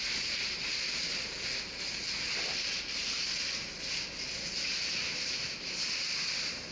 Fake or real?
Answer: real